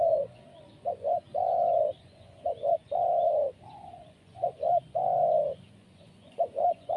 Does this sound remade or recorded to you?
remade